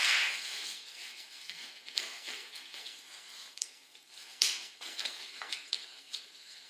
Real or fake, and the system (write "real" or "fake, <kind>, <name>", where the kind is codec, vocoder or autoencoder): fake, codec, SNAC